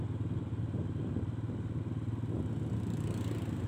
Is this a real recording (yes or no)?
yes